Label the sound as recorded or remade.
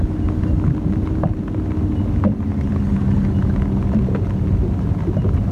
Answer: recorded